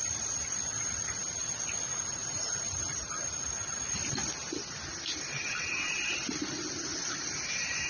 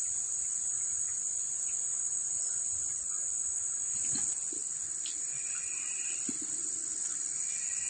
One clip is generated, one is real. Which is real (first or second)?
second